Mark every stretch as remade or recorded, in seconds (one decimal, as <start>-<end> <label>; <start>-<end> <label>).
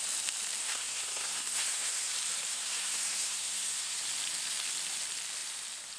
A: 0.0-0.6 recorded; 0.6-2.1 remade; 2.1-2.5 recorded; 2.5-4.0 remade; 4.0-6.0 recorded